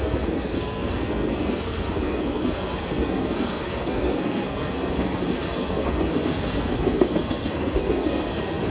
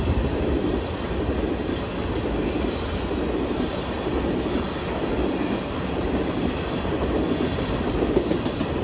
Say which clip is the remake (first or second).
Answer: first